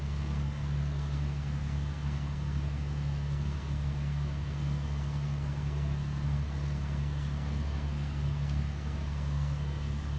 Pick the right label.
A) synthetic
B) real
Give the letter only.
A